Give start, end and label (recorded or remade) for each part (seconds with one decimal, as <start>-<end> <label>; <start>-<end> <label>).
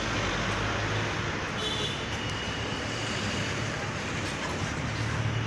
0.0-1.6 recorded; 1.6-4.9 remade; 4.9-5.5 recorded